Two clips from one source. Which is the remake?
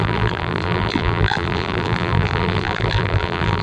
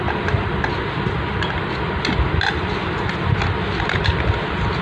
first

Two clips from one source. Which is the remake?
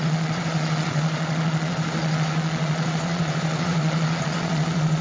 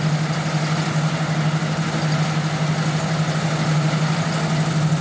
first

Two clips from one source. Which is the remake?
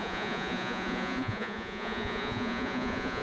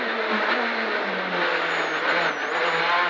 first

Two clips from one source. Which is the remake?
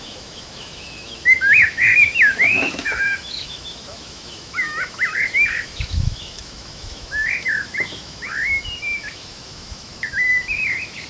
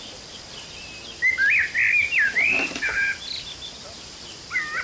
first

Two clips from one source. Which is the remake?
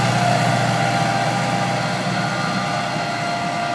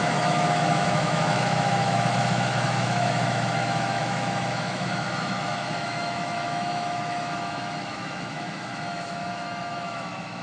second